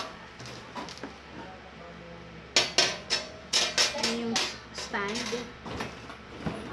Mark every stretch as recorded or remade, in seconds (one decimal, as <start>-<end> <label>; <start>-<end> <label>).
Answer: 0.0-2.9 recorded; 2.9-3.6 remade; 3.6-6.7 recorded